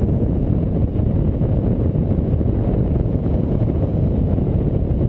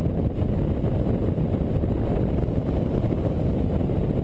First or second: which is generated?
first